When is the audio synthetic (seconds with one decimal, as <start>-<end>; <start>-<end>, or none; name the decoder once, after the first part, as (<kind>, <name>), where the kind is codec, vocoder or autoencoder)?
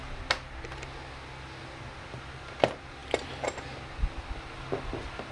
none